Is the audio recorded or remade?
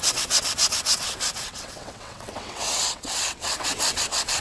remade